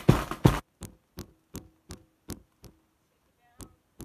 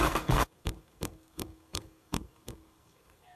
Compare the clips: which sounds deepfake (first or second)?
second